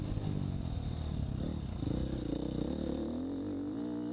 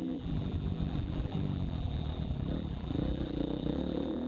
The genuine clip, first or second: first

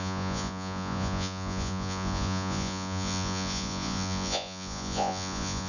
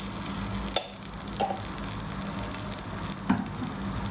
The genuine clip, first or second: second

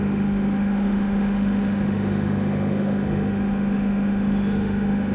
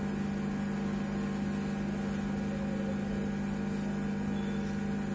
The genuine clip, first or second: second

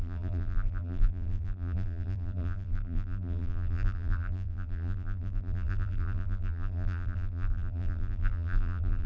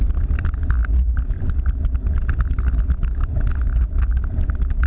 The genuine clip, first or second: second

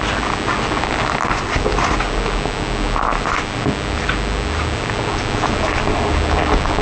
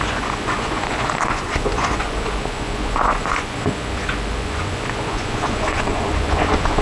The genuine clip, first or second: first